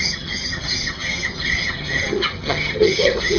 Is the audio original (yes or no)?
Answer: no